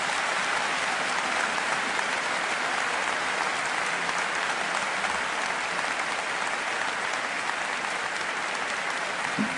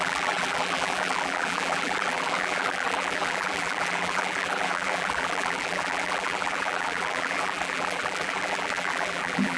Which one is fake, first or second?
second